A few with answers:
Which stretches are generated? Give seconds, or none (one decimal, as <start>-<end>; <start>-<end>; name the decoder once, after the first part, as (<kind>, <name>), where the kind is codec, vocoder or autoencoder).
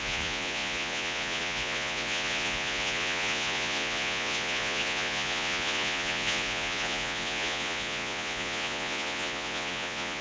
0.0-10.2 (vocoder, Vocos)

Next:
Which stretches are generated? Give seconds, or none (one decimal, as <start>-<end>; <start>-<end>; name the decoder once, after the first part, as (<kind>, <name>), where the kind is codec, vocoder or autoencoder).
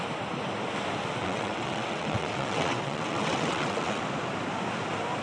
1.2-4.0 (vocoder, WaveNeXt)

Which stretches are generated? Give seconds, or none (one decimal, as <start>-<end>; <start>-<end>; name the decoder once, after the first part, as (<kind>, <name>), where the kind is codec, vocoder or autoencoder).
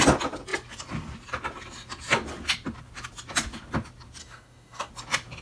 4.2-4.9 (codec, DAC)